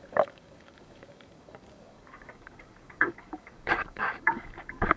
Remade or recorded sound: remade